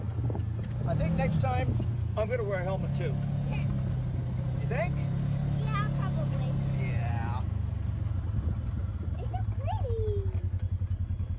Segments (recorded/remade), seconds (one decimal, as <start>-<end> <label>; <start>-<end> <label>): 0.0-11.4 recorded